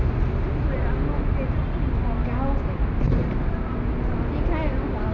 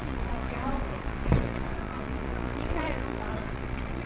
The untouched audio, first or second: first